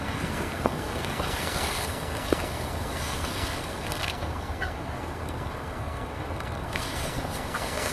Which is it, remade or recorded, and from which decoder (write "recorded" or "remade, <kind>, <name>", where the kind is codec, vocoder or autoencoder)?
remade, codec, SNAC